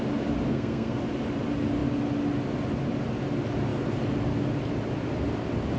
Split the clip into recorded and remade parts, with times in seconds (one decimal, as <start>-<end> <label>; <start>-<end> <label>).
0.0-0.5 recorded; 0.5-1.0 remade; 1.0-5.8 recorded